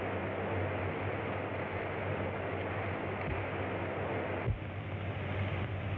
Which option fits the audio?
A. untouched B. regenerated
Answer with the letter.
A